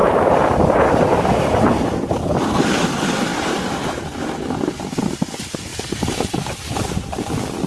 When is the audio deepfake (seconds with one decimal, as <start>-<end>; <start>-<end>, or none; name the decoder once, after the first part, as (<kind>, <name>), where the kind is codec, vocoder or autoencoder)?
0.0-2.3 (vocoder, BigVGAN v2); 5.7-7.3